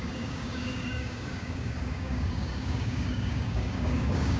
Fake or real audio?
fake